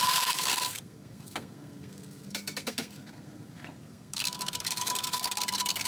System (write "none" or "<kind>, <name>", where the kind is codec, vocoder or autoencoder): codec, SNAC